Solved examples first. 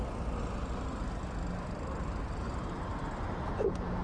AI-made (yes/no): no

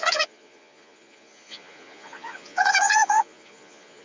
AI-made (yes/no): yes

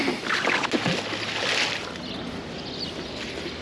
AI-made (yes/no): no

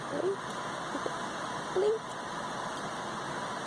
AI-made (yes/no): no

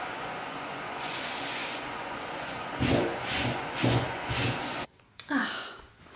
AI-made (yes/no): yes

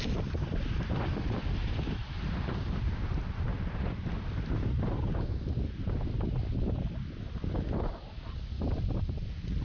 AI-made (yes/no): no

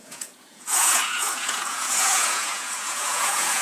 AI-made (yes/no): yes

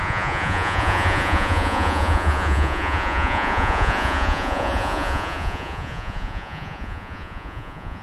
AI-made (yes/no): yes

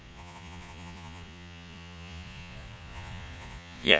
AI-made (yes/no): yes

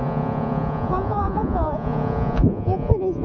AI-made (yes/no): yes